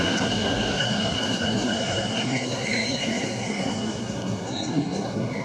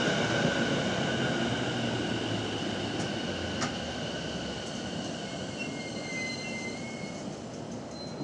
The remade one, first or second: first